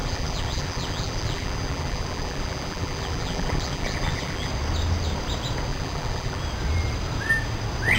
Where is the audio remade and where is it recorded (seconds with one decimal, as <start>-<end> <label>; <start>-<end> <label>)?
0.0-4.5 remade; 4.5-5.7 recorded; 5.7-6.4 remade; 6.4-8.0 recorded